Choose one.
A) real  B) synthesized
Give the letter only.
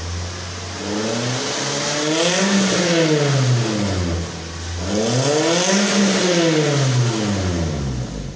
A